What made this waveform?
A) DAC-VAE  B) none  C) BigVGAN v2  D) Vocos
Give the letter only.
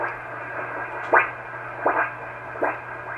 B